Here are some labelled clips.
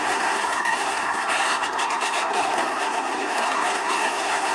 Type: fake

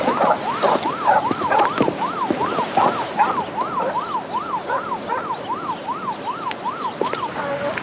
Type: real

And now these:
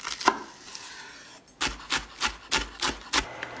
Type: real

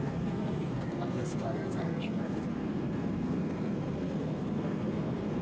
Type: fake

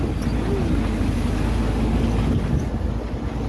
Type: real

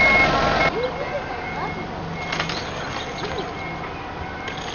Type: real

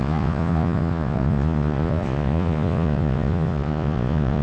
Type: fake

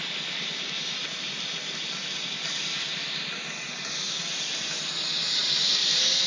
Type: real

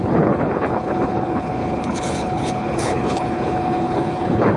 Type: fake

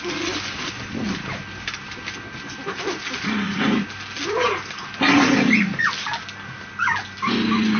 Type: real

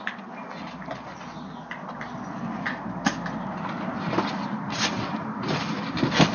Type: real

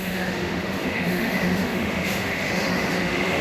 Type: fake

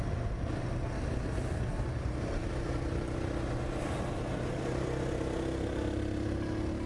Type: real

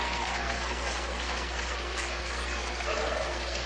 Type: fake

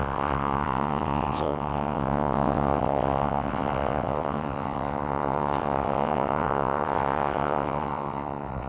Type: fake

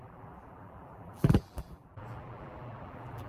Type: fake